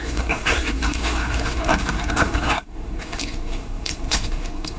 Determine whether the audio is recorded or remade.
remade